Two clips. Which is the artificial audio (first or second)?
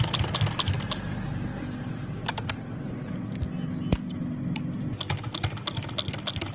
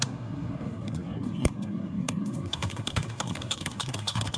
second